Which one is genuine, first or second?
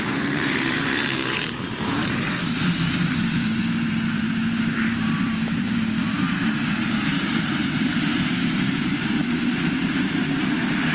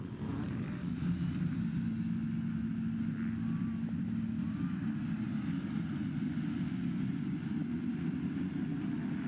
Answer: second